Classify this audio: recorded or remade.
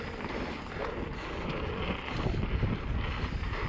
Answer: recorded